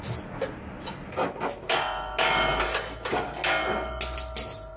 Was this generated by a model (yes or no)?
no